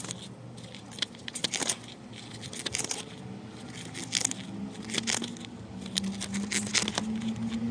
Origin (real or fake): real